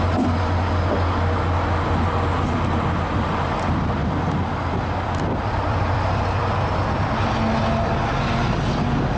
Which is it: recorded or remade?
recorded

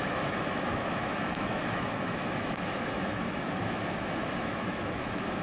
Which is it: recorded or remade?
remade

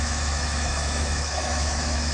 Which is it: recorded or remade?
remade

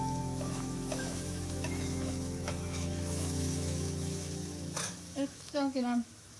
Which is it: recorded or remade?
remade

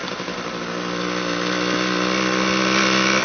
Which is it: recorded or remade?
recorded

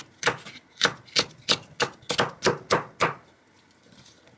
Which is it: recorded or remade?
recorded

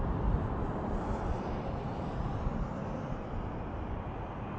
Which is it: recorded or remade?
recorded